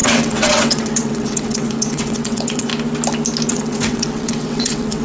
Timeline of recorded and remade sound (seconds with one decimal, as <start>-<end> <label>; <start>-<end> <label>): 0.0-2.7 remade; 2.7-3.5 recorded; 3.5-5.0 remade

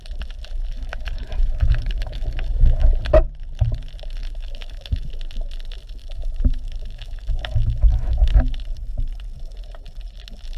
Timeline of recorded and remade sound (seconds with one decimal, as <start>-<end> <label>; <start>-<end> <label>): 0.0-0.7 recorded; 0.7-2.9 remade; 2.9-4.2 recorded; 4.2-5.1 remade; 5.1-6.0 recorded; 6.0-8.4 remade; 8.4-10.6 recorded

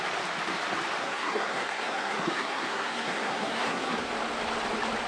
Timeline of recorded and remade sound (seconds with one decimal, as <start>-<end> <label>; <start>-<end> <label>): 0.0-1.0 recorded; 1.0-4.1 remade; 4.1-5.1 recorded

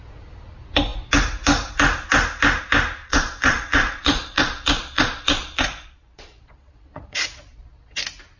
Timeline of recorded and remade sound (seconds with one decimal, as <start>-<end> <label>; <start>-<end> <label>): 0.0-3.0 recorded; 3.0-8.0 remade; 8.0-8.4 recorded

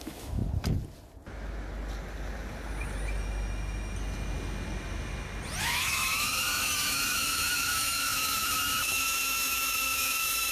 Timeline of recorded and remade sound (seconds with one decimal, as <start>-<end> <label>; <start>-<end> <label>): 0.0-0.4 remade; 0.4-5.6 recorded; 5.6-10.5 remade

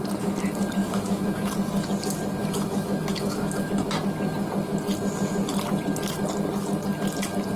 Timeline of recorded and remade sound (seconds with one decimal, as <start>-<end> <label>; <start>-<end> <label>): 0.0-0.8 recorded; 0.8-1.5 remade; 1.5-2.4 recorded; 2.4-3.7 remade; 3.7-7.6 recorded